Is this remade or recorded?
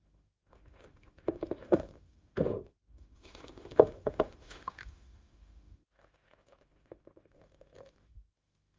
remade